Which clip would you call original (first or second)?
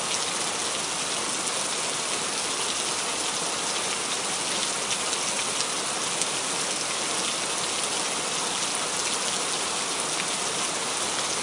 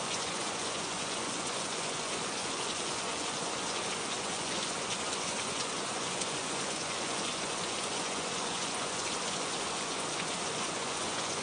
first